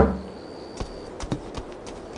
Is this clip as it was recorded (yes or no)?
yes